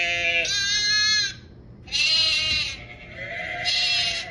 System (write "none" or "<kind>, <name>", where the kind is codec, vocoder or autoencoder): none